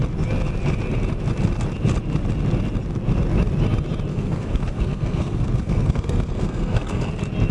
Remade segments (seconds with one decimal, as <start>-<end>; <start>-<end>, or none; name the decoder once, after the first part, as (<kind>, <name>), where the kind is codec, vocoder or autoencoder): 4.1-7.1 (codec, SNAC)